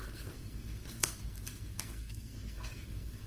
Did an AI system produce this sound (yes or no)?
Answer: yes